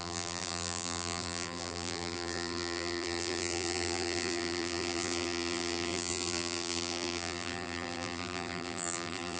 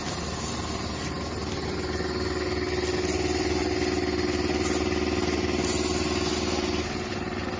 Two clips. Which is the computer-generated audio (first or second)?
first